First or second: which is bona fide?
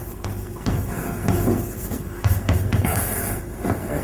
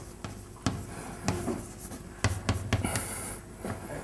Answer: second